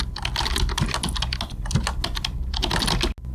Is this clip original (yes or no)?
yes